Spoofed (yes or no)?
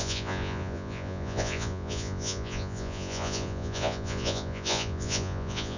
yes